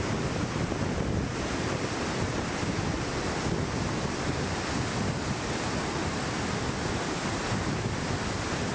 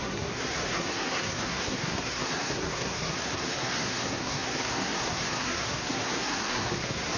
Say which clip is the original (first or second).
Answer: first